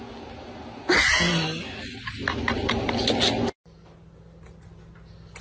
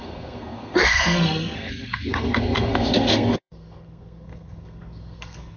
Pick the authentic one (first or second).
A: first